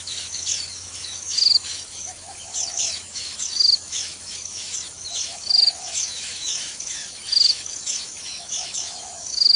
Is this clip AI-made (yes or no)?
yes